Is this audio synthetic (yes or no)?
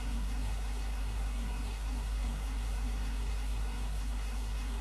yes